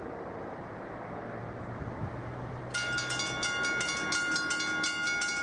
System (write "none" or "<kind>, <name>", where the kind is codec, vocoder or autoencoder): none